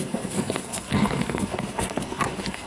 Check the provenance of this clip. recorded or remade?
remade